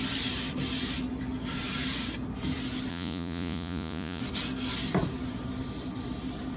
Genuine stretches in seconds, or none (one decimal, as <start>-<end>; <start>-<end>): 0.0-2.9; 4.2-6.6